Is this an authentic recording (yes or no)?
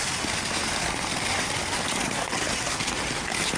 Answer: yes